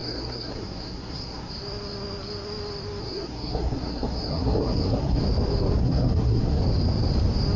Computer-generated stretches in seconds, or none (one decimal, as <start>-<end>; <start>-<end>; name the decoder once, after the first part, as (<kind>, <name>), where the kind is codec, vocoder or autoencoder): 0.0-1.5 (codec, SNAC); 3.0-5.2; 5.8-6.6